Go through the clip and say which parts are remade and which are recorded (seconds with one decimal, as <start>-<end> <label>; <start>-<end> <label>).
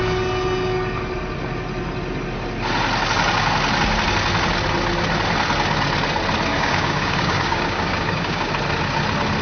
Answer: 0.0-6.5 recorded; 6.5-8.5 remade; 8.5-9.4 recorded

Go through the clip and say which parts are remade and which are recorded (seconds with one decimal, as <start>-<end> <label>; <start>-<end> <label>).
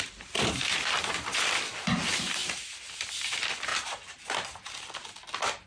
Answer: 0.0-2.4 remade; 2.4-3.2 recorded; 3.2-3.7 remade; 3.7-5.7 recorded